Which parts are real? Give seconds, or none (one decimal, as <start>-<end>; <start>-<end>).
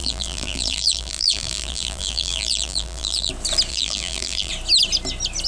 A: 3.3-3.7; 4.5-5.5